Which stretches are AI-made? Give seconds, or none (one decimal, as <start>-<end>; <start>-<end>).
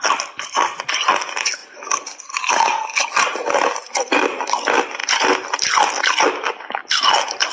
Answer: none